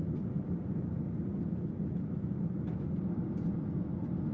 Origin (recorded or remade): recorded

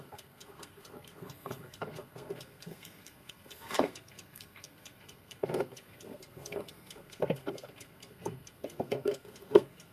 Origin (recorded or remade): remade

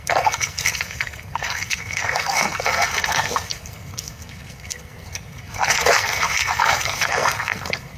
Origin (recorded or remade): remade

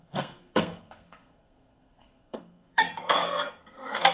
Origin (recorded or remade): remade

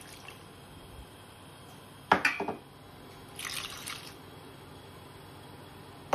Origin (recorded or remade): recorded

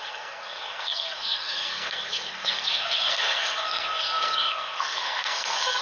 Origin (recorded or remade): remade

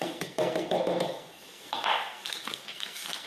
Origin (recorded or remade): remade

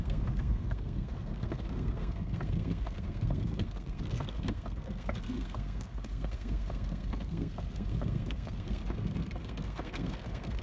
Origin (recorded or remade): remade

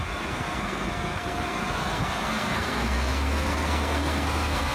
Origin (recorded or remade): remade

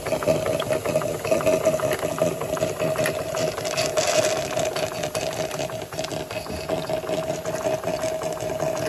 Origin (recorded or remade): recorded